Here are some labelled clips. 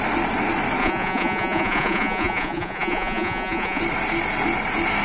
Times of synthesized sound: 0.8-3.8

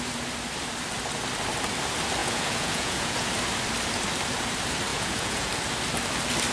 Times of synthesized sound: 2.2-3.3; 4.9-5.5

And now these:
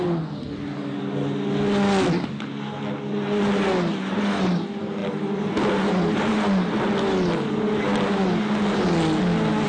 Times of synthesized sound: none

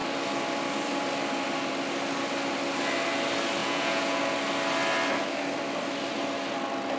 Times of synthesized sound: 3.6-4.2

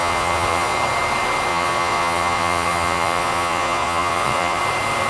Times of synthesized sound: 0.0-0.8; 1.5-4.6

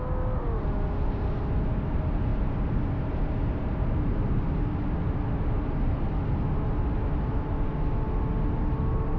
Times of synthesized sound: none

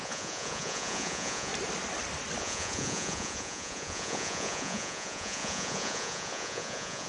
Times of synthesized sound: 0.0-1.5; 2.4-7.1

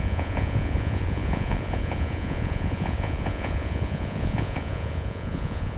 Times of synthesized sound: 0.0-5.8